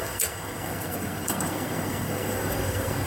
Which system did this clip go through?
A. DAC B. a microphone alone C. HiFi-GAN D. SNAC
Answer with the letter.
D